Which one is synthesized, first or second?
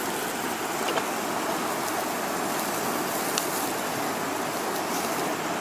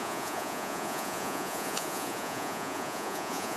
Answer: second